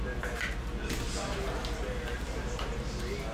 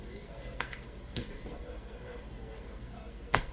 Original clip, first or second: first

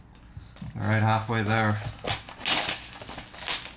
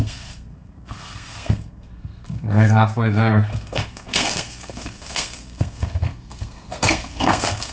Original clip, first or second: first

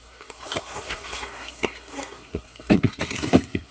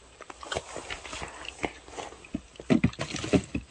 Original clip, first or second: second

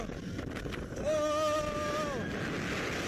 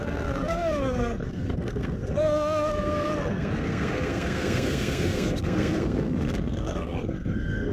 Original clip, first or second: first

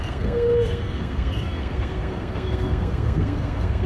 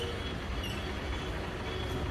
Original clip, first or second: second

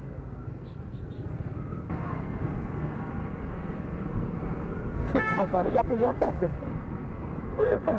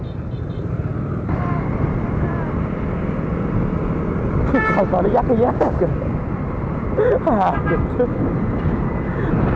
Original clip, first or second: second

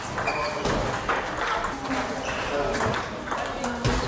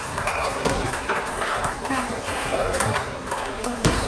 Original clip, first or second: first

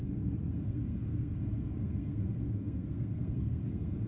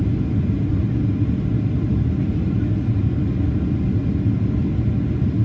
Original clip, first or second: second